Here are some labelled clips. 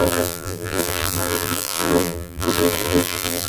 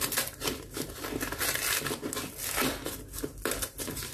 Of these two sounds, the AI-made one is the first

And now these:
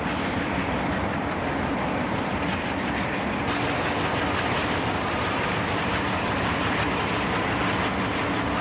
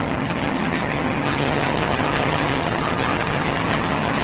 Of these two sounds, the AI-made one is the second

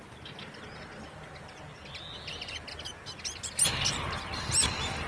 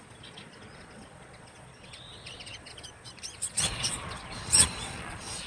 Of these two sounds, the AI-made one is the second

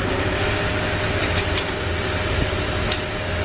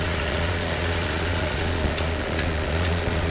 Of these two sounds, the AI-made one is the second